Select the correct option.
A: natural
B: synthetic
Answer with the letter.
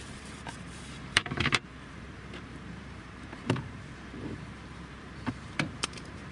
B